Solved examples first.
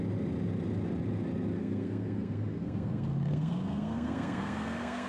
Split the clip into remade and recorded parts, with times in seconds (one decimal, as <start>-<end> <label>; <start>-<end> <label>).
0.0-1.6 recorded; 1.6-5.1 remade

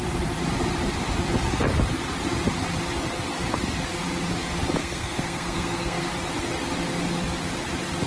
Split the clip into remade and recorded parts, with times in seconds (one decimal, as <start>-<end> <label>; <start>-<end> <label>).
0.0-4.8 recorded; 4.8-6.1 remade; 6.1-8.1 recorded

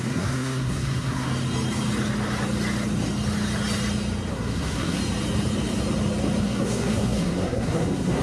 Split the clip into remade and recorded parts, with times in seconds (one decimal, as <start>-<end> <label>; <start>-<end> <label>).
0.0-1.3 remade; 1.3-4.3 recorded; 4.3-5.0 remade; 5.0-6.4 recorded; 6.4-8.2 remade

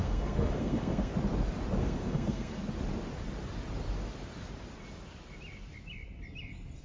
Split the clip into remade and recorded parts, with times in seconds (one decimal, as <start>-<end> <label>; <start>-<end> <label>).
0.0-1.1 remade; 1.1-1.8 recorded; 1.8-2.6 remade; 2.6-6.8 recorded

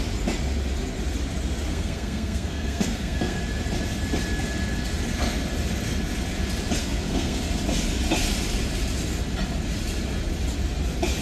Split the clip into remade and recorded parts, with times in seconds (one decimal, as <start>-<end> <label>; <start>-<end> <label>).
0.0-1.7 recorded; 1.7-3.4 remade; 3.4-6.8 recorded; 6.8-7.4 remade; 7.4-11.2 recorded

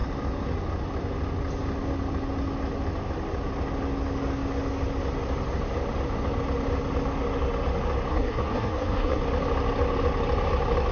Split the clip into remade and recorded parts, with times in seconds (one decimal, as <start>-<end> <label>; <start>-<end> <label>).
0.0-8.1 recorded; 8.1-9.2 remade; 9.2-10.9 recorded